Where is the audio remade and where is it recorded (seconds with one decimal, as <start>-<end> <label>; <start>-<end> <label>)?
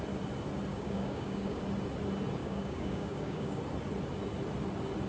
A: 0.0-0.7 recorded; 0.7-1.6 remade; 1.6-2.4 recorded; 2.4-3.6 remade; 3.6-5.1 recorded